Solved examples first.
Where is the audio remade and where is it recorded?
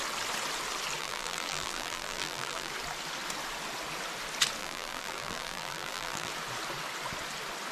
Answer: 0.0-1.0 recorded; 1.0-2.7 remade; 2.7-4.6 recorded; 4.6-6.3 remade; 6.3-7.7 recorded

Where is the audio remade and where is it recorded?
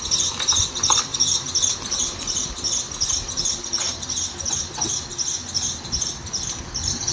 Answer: 0.0-7.1 recorded